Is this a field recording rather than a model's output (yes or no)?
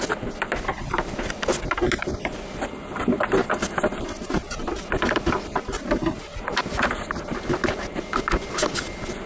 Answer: yes